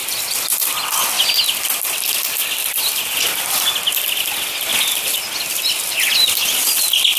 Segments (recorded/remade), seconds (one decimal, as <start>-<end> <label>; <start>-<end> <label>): 0.0-0.8 remade; 0.8-7.2 recorded